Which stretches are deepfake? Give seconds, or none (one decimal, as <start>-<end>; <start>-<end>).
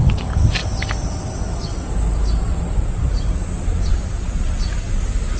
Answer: none